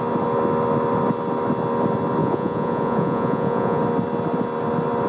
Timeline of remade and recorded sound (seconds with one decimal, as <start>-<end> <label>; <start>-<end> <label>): 0.0-2.2 recorded; 2.2-3.8 remade; 3.8-5.1 recorded